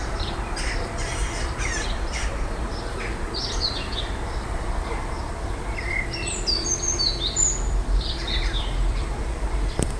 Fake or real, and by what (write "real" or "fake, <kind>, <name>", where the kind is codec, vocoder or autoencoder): fake, vocoder, BigVGAN v2